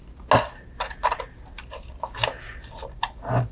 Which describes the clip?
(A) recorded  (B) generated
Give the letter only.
A